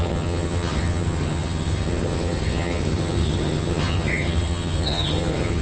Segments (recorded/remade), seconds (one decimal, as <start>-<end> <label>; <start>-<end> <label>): 0.0-5.6 remade